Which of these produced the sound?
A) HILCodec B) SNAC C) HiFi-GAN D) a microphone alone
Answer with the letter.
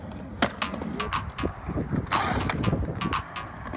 D